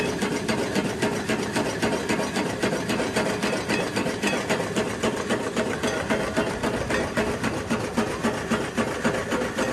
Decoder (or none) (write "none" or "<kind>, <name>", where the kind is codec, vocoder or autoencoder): none